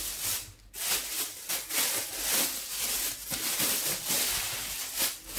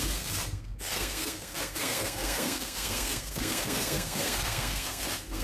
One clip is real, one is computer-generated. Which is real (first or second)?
first